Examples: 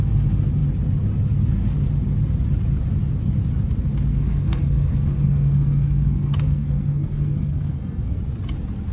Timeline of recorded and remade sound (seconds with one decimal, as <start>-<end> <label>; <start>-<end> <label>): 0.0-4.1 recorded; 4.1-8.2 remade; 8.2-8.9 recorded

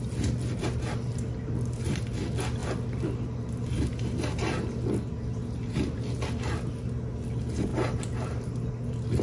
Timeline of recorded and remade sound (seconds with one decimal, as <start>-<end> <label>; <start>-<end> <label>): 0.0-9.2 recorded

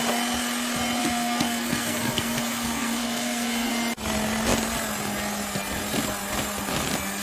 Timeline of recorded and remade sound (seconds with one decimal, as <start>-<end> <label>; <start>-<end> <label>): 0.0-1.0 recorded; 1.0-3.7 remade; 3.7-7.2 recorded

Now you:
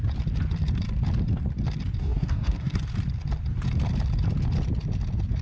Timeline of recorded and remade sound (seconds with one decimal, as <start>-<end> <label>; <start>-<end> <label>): 0.0-2.0 recorded; 2.0-2.8 remade; 2.8-5.4 recorded